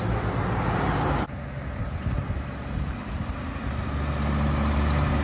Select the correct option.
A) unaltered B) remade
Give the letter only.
A